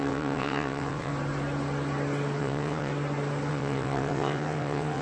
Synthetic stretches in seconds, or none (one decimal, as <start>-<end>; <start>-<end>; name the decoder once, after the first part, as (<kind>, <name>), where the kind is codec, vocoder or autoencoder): 0.0-1.1 (vocoder, WaveNeXt); 2.4-2.9; 3.5-5.0